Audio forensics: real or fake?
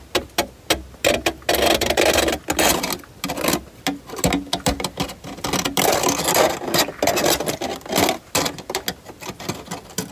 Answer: real